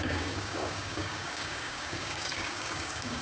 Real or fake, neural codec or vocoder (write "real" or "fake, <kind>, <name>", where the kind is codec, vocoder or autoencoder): fake, codec, DAC